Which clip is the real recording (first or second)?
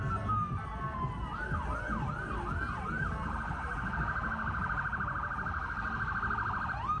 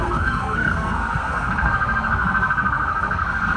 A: first